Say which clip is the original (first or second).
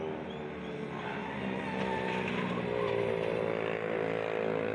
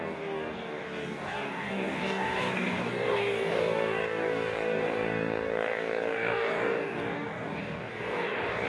first